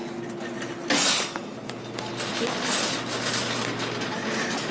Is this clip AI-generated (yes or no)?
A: no